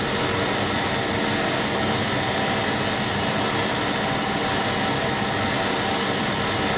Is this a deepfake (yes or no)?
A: no